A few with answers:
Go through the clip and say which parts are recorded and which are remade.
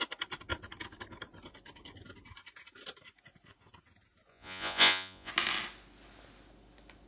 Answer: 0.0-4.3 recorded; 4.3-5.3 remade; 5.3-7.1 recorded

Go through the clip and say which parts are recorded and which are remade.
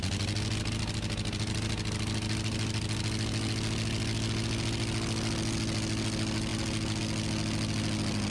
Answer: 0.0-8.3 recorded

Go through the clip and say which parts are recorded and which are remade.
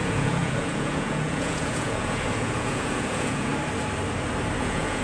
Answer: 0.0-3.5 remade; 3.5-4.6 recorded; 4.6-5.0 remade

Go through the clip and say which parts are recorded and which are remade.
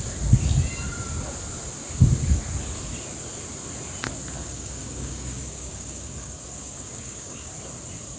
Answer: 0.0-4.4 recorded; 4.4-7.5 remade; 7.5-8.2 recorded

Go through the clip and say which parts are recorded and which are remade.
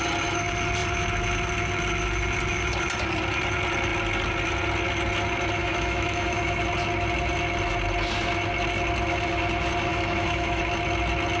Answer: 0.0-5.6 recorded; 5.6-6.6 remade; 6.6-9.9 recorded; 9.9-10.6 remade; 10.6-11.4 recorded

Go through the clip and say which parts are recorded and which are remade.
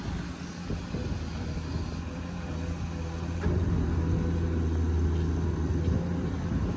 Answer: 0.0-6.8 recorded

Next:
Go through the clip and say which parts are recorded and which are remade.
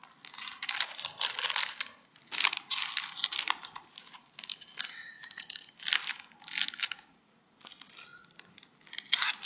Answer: 0.0-9.5 recorded